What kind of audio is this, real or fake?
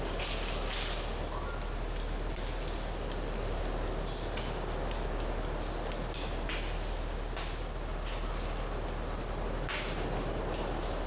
real